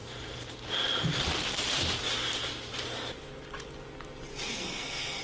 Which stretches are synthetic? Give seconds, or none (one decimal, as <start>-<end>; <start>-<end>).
4.3-5.2